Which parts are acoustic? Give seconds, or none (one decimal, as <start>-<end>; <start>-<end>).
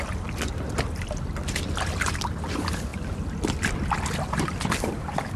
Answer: 0.0-5.4